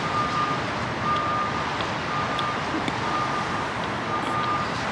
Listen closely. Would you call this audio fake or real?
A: fake